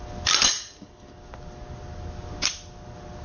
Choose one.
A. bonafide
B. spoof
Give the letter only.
A